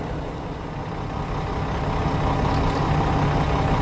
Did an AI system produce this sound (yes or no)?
no